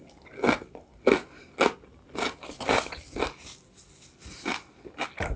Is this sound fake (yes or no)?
no